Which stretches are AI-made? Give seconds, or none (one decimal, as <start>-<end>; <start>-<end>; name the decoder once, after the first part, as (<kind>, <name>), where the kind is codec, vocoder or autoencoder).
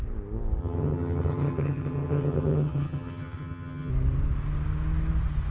0.6-3.9 (vocoder, HiFi-GAN)